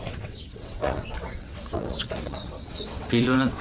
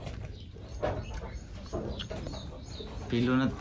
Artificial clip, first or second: first